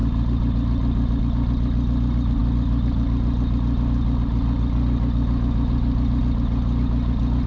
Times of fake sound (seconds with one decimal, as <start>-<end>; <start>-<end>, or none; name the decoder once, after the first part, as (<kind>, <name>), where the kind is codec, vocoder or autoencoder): none